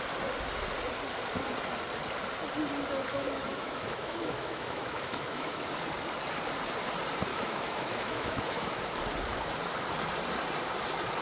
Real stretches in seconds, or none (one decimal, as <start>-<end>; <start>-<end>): 0.0-3.1; 5.6-7.3; 8.8-11.2